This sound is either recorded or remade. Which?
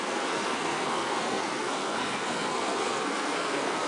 remade